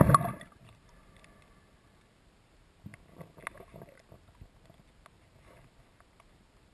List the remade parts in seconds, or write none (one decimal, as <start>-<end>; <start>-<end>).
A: none